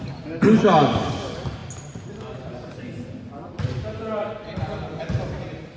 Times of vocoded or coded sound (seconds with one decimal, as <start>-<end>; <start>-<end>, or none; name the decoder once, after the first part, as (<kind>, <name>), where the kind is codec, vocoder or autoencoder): none